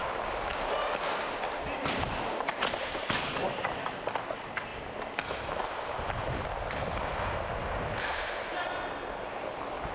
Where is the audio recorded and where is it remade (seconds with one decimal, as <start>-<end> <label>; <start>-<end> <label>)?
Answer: 0.0-9.9 recorded